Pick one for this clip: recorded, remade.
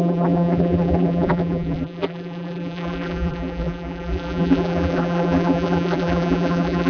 remade